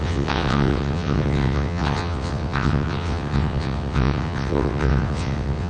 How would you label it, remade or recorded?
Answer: remade